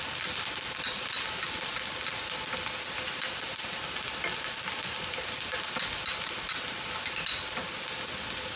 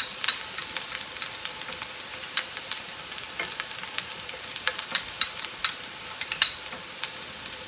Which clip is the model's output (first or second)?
second